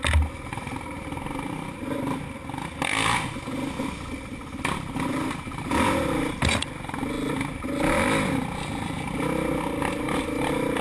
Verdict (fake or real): real